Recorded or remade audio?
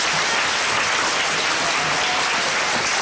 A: recorded